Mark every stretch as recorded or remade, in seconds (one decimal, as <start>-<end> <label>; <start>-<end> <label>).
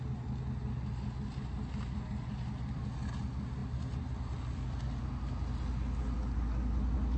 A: 0.0-7.2 recorded